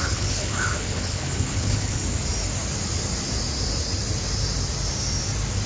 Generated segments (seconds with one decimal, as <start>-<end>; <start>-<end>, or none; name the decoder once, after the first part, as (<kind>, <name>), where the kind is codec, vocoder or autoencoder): 0.0-2.0 (codec, HILCodec)